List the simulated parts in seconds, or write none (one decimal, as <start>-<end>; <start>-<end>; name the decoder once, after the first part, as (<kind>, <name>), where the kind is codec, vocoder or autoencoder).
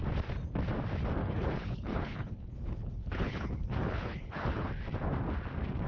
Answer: 1.2-4.7 (codec, HILCodec)